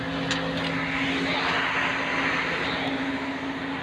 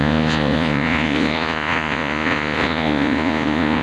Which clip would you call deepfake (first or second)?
second